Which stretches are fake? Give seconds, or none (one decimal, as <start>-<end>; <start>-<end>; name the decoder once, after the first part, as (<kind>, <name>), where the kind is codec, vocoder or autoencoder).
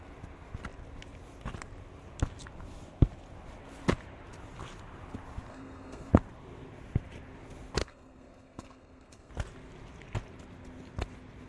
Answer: 5.5-6.1 (codec, SNAC); 7.8-9.3